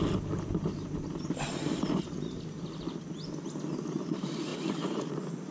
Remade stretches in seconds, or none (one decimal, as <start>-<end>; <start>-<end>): none